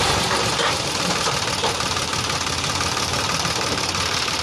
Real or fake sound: fake